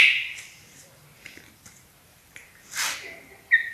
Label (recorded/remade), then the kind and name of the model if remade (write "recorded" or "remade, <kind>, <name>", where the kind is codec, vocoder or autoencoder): recorded